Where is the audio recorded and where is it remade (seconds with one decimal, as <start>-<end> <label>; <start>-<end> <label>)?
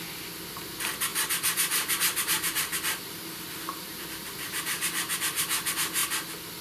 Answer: 0.0-1.1 recorded; 1.1-4.8 remade; 4.8-6.6 recorded